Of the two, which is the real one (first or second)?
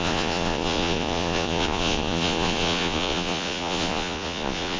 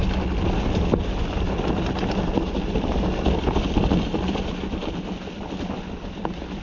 second